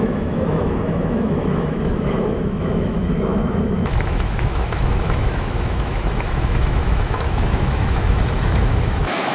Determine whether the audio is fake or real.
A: fake